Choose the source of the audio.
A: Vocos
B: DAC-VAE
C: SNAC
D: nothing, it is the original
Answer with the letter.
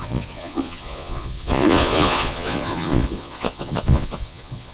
A